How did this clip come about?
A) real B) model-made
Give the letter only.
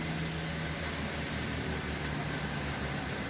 A